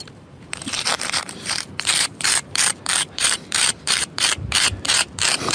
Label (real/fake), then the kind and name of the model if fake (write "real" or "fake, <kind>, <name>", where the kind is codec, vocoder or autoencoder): fake, vocoder, BigVGAN v2